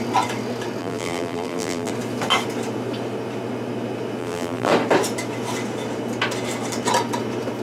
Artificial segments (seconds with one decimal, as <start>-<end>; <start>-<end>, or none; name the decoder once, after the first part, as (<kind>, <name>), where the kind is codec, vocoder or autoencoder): 0.8-1.9 (vocoder, BigVGAN v2); 4.2-4.7